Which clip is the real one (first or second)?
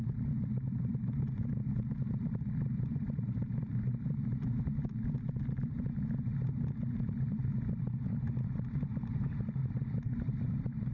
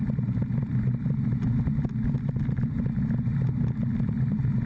second